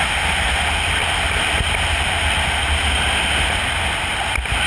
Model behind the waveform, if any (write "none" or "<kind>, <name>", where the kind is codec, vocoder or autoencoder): none